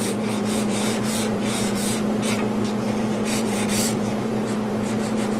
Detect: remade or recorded remade